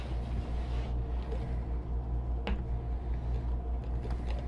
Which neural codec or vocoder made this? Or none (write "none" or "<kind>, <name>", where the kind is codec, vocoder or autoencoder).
none